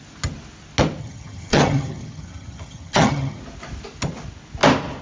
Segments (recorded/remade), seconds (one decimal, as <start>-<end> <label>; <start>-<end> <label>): 0.0-1.0 recorded; 1.0-3.4 remade; 3.4-5.0 recorded